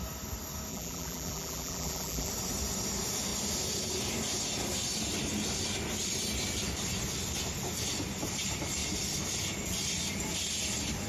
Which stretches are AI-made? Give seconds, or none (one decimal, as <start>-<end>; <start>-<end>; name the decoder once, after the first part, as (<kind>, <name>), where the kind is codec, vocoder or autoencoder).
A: 0.7-2.3 (vocoder, BigVGAN v2)